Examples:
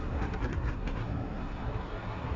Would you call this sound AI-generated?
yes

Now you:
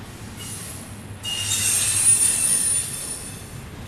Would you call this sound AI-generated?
no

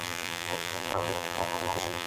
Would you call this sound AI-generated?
yes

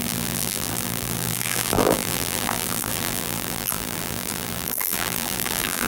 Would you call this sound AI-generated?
yes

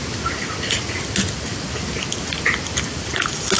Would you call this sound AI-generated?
no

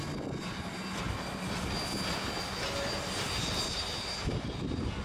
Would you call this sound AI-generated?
no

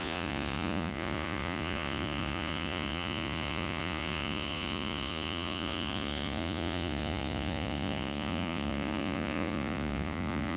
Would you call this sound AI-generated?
yes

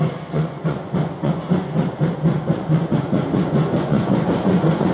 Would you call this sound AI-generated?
yes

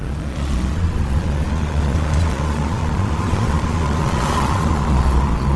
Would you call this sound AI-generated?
yes